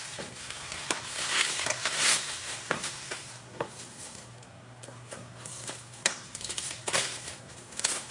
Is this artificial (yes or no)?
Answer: yes